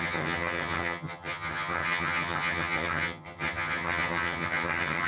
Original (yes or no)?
no